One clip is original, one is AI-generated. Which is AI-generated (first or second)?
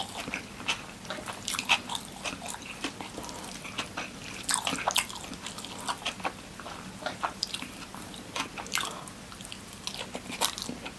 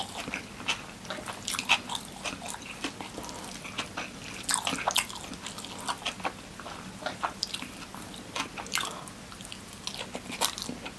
first